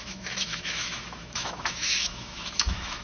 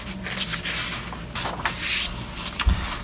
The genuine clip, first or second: second